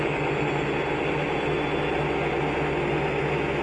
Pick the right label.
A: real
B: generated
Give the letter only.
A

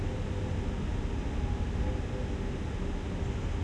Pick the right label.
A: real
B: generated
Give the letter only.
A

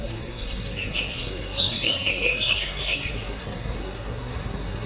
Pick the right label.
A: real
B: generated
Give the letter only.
B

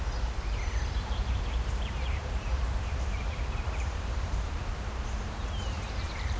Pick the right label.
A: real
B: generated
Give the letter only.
B